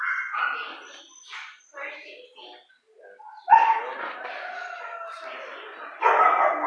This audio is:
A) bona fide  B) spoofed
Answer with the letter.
A